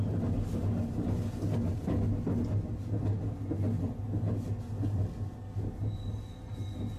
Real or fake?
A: real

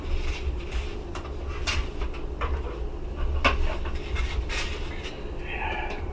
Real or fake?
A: real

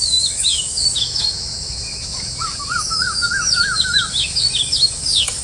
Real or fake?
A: fake